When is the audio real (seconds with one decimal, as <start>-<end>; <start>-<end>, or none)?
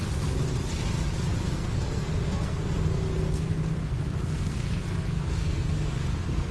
0.0-1.4